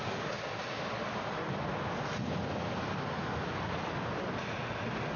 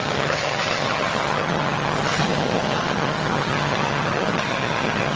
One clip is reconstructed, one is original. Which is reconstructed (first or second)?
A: second